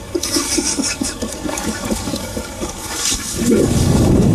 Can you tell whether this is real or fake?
fake